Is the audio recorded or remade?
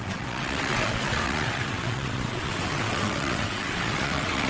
remade